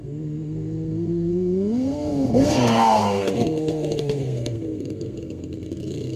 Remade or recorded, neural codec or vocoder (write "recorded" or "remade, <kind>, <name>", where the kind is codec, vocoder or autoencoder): remade, codec, SNAC